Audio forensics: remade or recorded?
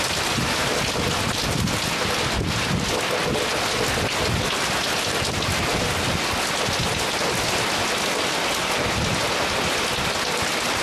recorded